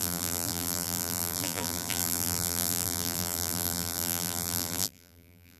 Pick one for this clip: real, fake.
fake